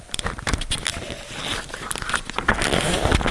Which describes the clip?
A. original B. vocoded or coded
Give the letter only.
A